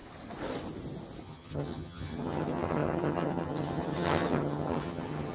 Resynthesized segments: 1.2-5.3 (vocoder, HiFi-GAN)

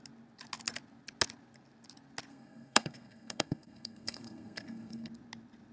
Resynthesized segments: 2.3-5.1 (codec, SNAC)

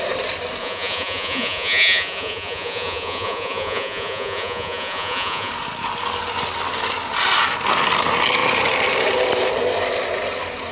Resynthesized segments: 0.6-5.5 (vocoder, Vocos)

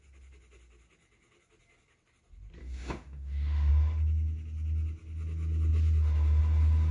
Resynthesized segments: 2.6-3.7 (autoencoder, DAC-VAE)